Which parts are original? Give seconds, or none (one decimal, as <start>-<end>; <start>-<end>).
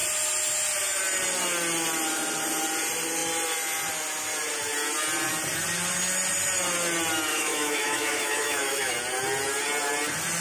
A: 0.0-7.3; 8.9-10.4